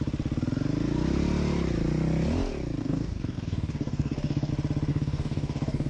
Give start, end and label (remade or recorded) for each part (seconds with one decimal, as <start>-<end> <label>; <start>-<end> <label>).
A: 0.0-2.8 recorded; 2.8-4.5 remade; 4.5-4.9 recorded; 4.9-5.9 remade